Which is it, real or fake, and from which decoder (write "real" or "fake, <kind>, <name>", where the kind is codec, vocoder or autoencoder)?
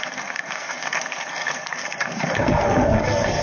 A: fake, codec, SNAC